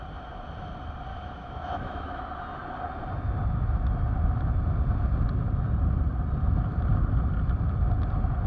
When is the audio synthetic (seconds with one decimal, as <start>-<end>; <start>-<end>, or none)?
1.1-2.2